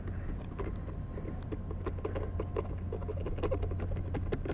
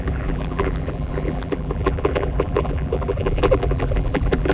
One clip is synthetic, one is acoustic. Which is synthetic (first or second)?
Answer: second